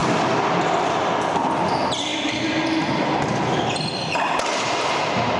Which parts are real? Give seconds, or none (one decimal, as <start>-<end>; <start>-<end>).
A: 0.0-5.4